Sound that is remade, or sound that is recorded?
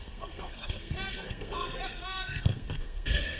remade